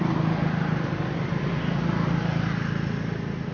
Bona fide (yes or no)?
yes